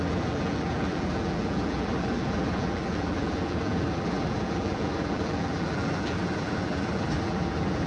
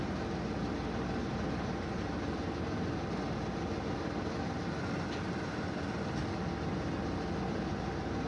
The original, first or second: second